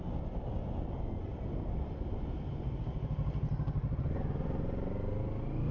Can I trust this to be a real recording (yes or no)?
yes